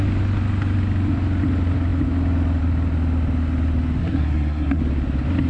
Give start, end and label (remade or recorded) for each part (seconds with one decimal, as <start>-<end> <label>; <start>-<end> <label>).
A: 0.0-4.0 recorded; 4.0-4.8 remade; 4.8-5.5 recorded